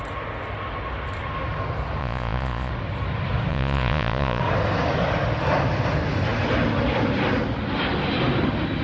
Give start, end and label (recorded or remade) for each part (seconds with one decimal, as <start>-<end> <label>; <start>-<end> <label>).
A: 0.0-2.0 recorded; 2.0-2.7 remade; 2.7-3.5 recorded; 3.5-4.4 remade; 4.4-8.8 recorded